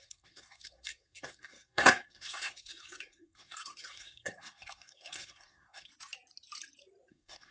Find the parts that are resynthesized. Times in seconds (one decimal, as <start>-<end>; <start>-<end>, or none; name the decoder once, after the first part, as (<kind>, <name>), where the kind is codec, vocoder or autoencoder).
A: 0.0-5.9 (codec, SNAC); 7.1-7.5